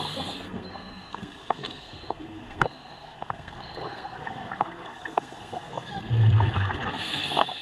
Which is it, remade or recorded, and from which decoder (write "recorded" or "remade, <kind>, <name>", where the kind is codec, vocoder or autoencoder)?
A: remade, codec, SNAC